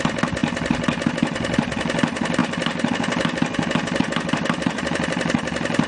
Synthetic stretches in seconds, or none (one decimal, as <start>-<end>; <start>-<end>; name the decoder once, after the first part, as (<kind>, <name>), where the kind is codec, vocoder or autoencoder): 0.0-0.4 (vocoder, BigVGAN v2); 1.1-2.4; 2.9-5.9